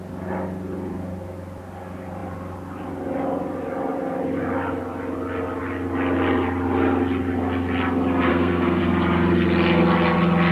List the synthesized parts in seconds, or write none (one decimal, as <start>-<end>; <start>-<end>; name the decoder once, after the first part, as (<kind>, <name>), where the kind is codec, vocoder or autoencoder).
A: 8.3-8.8 (codec, SNAC)